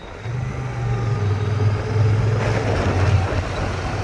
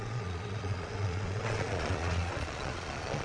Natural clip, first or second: first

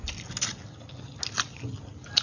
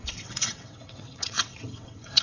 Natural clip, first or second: first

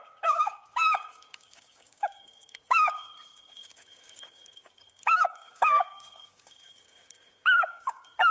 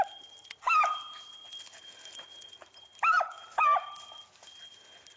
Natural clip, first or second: second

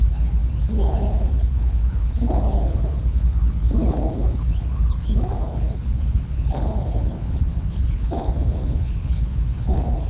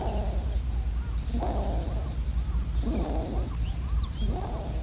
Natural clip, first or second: second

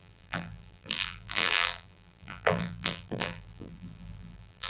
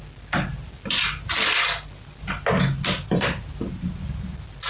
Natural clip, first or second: second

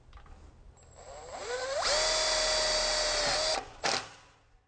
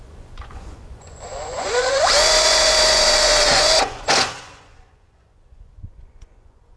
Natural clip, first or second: first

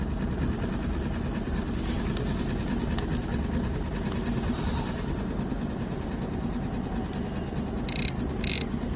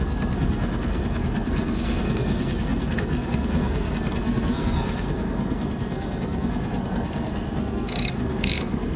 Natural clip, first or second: first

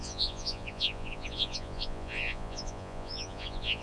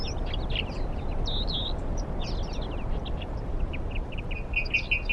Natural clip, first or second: second